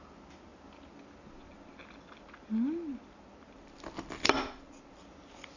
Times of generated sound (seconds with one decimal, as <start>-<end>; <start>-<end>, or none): none